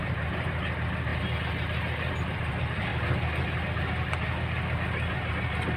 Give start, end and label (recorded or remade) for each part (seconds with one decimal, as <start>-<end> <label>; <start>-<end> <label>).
0.0-1.1 remade; 1.1-2.1 recorded; 2.1-2.9 remade; 2.9-5.3 recorded; 5.3-5.8 remade